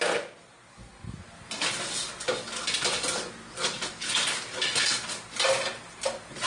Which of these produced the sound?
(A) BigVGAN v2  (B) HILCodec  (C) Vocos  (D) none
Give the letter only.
D